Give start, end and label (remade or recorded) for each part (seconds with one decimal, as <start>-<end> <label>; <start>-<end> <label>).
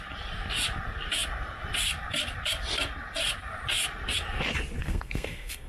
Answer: 0.0-4.8 recorded; 4.8-5.7 remade